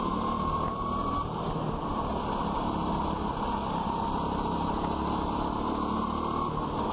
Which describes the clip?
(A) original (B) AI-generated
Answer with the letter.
A